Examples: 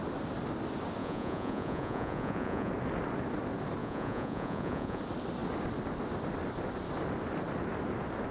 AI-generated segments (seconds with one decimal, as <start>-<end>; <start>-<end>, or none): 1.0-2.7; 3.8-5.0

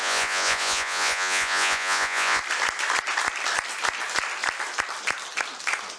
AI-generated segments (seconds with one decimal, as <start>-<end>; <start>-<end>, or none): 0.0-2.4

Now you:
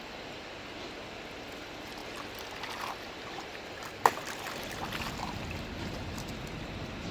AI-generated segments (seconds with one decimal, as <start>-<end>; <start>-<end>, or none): none

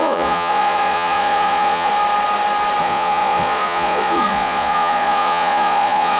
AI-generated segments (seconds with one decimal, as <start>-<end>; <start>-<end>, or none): 0.0-1.9; 2.8-6.2

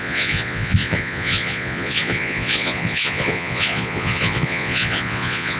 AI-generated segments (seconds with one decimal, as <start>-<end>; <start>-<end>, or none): 0.0-5.6